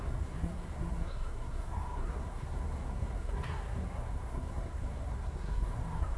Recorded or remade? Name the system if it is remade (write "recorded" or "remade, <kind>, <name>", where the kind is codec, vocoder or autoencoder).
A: remade, codec, SNAC